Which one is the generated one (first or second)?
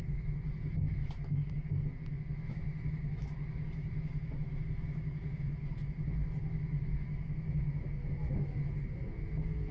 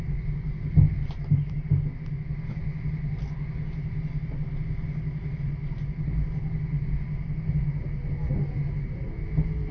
first